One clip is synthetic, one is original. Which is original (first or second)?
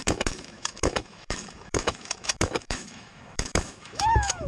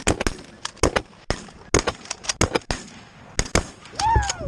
second